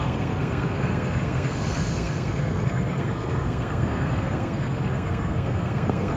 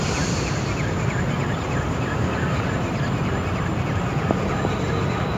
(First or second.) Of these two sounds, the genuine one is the second